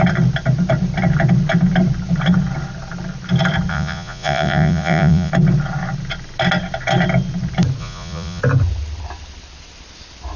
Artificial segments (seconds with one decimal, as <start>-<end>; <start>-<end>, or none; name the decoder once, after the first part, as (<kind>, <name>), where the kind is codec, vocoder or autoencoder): 3.7-5.3 (vocoder, Vocos); 7.8-8.4